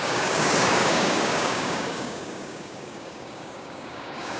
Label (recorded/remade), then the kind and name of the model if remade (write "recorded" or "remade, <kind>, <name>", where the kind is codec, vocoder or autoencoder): remade, codec, DAC